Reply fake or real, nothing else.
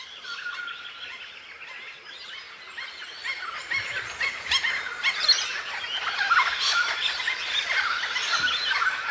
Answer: real